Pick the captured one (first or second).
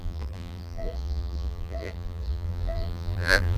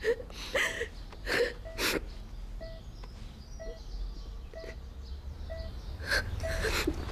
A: second